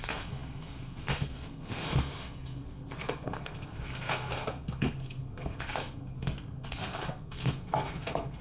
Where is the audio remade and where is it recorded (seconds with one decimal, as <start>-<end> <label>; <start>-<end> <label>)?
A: 0.0-8.4 remade